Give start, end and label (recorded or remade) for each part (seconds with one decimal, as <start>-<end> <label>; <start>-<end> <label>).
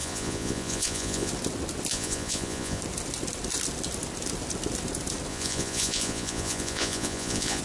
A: 0.0-1.3 remade; 1.3-1.9 recorded; 1.9-2.8 remade; 2.8-5.3 recorded; 5.3-7.6 remade